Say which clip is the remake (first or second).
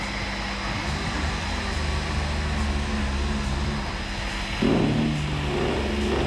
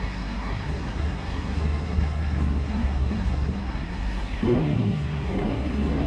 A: second